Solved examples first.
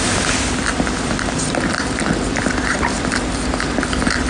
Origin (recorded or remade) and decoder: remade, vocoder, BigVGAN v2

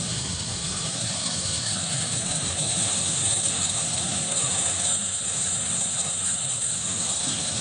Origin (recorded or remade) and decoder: remade, codec, SNAC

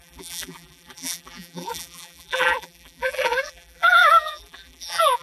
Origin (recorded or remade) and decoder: remade, vocoder, BigVGAN v2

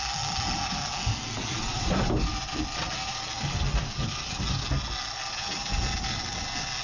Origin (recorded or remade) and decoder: recorded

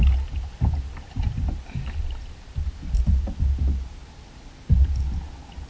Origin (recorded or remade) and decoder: recorded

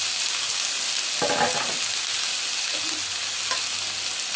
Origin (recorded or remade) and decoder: recorded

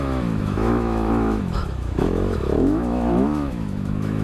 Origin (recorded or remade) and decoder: remade, autoencoder, DAC-VAE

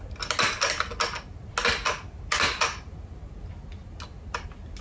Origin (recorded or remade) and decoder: recorded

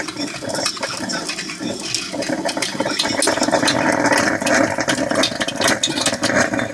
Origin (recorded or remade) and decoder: recorded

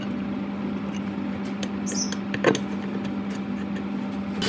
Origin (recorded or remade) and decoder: recorded